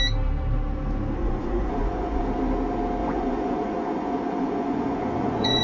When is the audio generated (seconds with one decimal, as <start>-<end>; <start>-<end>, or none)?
1.2-2.2; 3.0-5.6